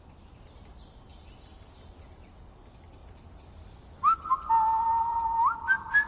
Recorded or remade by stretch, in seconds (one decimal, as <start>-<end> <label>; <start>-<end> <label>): 0.0-6.1 recorded